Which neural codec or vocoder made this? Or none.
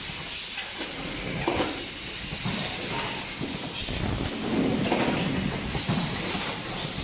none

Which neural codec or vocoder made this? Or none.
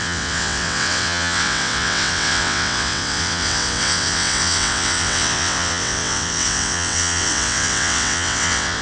vocoder, WaveNeXt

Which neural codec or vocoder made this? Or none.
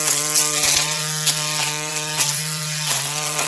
vocoder, WaveNeXt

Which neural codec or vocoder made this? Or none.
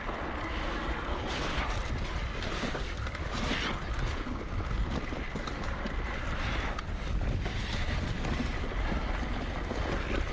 none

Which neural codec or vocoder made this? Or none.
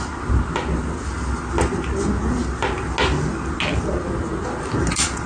none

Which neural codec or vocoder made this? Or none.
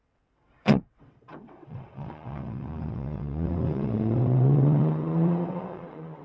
vocoder, WaveNeXt